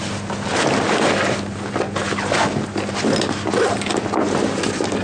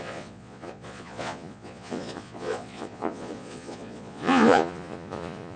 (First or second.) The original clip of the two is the first